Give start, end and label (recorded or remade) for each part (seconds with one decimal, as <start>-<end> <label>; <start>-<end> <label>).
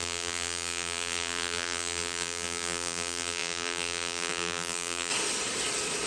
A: 0.0-5.1 remade; 5.1-6.1 recorded